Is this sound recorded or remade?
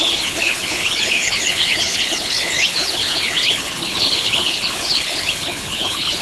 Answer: remade